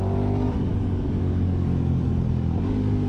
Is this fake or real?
fake